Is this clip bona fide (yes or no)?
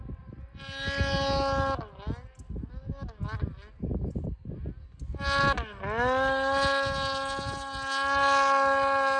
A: yes